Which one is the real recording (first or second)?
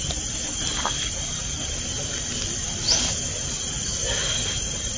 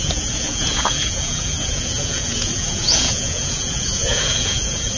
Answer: first